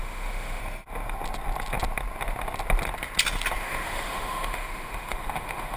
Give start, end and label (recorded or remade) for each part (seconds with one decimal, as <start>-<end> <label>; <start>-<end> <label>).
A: 0.0-0.6 remade; 0.6-3.6 recorded; 3.6-5.8 remade